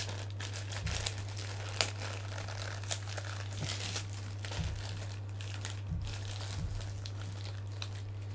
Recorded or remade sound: recorded